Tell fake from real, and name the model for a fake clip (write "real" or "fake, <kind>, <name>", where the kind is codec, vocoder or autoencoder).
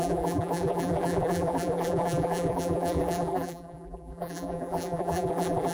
fake, vocoder, BigVGAN v2